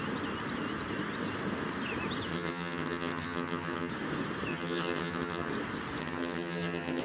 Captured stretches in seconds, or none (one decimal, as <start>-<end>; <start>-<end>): 0.0-2.3; 3.9-4.5; 5.5-6.0